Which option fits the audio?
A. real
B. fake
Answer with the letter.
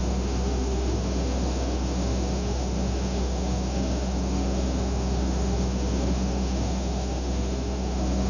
B